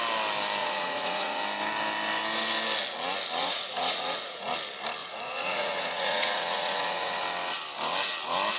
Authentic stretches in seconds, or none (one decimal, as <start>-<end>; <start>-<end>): 0.0-0.6; 1.4-3.4; 4.5-5.0; 7.2-8.6